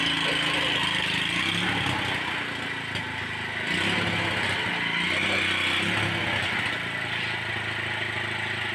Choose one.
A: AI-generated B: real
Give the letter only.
B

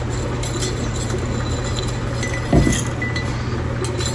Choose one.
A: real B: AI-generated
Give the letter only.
A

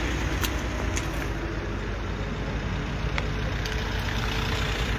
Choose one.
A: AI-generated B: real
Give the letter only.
B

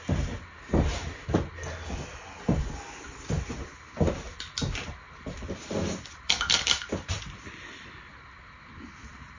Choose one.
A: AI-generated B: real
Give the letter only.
B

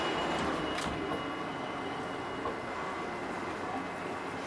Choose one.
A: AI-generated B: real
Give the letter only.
B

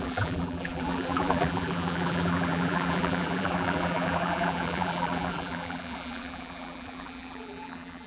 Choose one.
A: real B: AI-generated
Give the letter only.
B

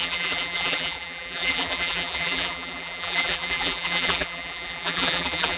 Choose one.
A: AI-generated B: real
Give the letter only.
A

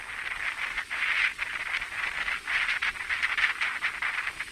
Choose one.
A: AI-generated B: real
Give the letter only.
B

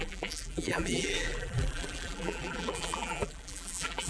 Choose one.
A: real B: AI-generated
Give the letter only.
B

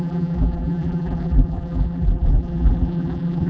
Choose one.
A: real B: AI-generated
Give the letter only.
B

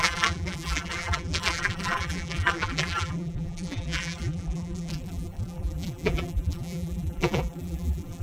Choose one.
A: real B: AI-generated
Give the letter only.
B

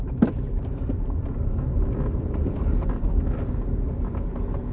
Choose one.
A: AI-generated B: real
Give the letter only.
A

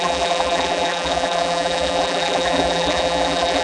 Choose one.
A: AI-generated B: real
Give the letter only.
A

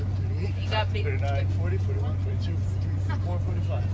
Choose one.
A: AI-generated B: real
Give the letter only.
B